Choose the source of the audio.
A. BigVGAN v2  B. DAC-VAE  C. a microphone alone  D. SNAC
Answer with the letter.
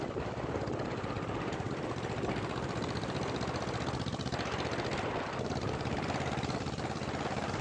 A